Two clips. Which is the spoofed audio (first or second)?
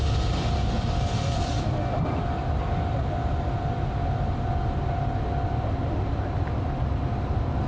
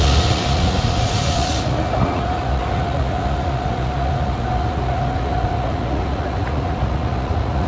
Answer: second